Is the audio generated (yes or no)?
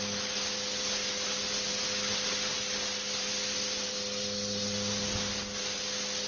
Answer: no